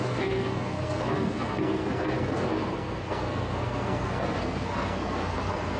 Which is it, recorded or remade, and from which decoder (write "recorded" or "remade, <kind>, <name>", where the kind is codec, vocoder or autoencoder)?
remade, codec, SNAC